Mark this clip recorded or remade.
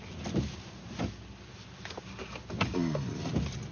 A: recorded